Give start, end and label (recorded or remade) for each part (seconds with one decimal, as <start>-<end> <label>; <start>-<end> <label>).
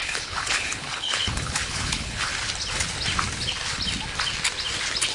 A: 0.0-2.3 remade; 2.3-5.1 recorded